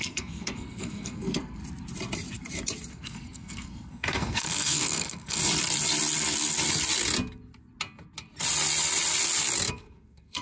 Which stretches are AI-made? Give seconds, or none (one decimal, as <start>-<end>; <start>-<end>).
0.0-1.6; 2.9-5.4; 9.7-10.4